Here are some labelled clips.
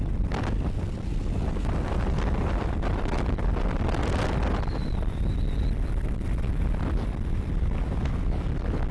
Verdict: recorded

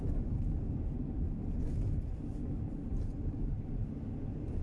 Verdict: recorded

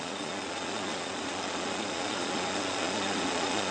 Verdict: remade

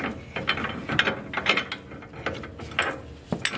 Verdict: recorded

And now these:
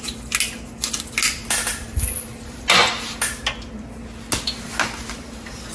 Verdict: recorded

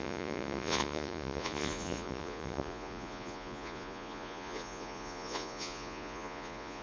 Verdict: remade